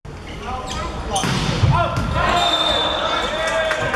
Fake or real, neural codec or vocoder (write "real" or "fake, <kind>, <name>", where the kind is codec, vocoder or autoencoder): real